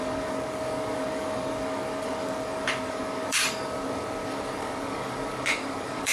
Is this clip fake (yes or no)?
yes